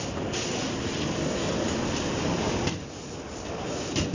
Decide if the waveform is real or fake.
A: real